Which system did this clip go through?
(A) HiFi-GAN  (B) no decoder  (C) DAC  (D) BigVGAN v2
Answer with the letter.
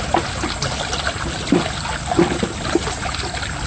B